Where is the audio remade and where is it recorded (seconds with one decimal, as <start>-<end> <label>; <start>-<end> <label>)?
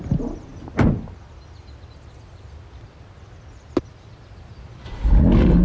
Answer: 0.0-5.6 recorded